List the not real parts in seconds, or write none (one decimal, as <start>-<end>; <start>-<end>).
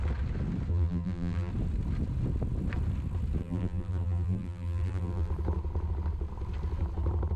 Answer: 0.7-1.5; 3.4-5.3